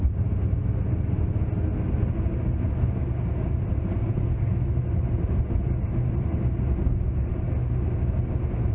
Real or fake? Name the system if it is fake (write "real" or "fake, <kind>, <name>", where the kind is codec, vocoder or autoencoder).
real